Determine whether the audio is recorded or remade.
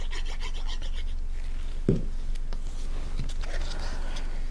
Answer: recorded